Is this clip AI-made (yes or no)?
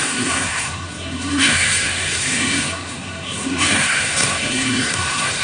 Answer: yes